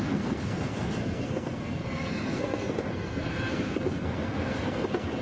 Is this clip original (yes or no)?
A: no